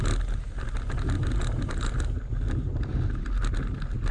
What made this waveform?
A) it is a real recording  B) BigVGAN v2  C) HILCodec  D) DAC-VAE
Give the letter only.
A